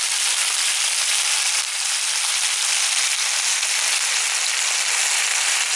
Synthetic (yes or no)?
no